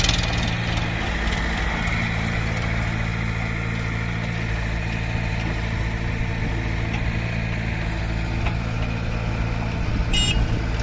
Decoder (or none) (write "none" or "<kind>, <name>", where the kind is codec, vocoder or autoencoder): none